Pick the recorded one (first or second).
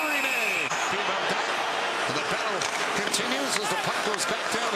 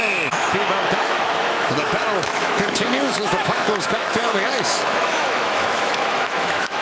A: first